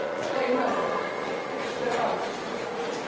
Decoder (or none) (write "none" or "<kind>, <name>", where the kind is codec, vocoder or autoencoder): vocoder, Vocos